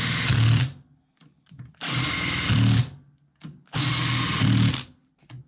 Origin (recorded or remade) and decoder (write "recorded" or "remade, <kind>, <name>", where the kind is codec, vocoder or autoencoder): recorded